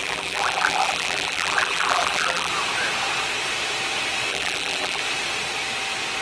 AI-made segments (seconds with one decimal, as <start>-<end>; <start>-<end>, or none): 0.0-2.5; 4.3-5.0